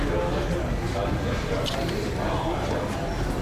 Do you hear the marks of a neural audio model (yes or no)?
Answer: no